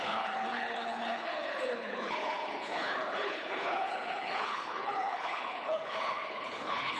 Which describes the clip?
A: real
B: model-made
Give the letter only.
B